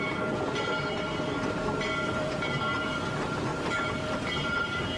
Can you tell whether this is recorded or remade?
remade